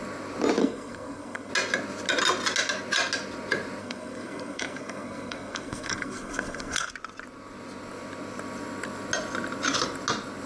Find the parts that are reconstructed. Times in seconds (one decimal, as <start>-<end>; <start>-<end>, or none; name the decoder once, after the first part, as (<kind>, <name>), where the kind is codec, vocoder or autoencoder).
0.6-1.5 (codec, SNAC); 3.8-6.9

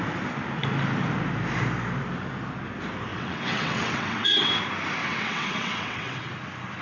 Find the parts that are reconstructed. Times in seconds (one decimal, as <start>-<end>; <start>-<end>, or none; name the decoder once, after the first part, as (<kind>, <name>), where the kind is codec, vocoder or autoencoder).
3.1-4.6 (vocoder, WaveNeXt); 5.0-6.3